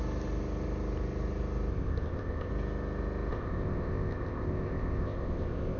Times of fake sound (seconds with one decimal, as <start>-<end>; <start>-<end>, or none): 1.7-2.5; 3.3-5.8